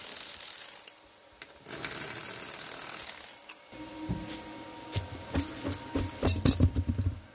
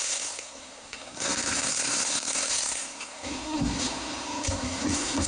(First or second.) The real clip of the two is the first